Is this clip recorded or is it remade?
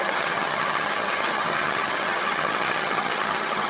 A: remade